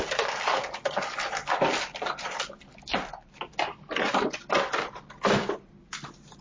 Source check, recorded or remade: recorded